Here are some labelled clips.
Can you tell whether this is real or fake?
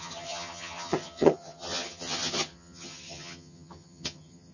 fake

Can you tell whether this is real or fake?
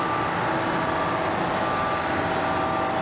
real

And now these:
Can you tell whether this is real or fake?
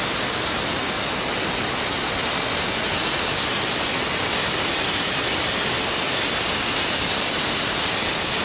real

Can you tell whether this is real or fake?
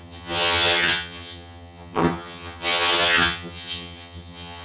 fake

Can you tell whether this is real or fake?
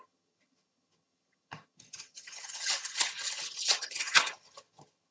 fake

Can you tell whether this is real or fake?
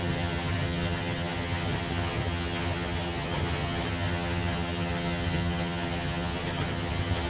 fake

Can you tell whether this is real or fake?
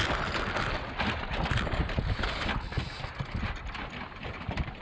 real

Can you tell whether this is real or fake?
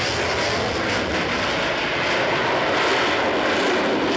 real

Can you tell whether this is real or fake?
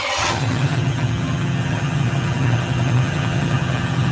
fake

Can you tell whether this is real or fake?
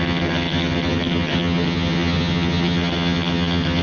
fake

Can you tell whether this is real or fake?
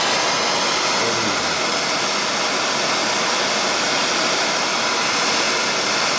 real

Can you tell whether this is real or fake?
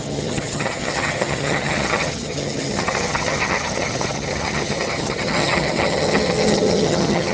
fake